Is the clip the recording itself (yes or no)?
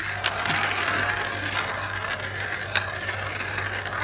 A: yes